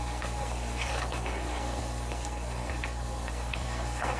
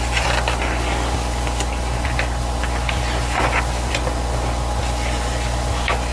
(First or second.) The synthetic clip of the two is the first